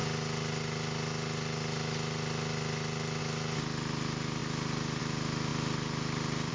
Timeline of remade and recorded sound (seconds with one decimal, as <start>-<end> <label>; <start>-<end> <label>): 0.0-6.5 recorded